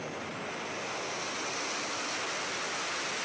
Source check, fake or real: real